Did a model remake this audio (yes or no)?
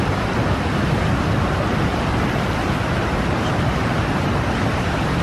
no